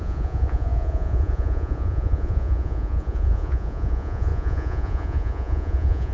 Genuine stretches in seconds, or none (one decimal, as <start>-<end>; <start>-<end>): none